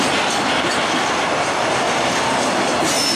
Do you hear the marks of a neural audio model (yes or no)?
no